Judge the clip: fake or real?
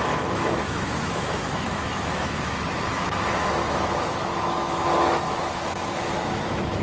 fake